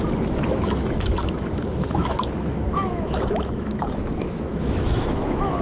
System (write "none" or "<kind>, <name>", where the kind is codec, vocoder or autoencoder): autoencoder, DAC-VAE